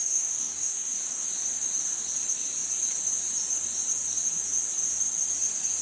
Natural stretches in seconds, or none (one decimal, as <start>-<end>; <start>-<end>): 1.3-5.8